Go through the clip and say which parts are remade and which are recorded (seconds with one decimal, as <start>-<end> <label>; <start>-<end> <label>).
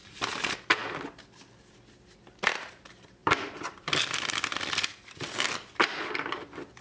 0.0-3.2 recorded; 3.2-4.1 remade; 4.1-6.8 recorded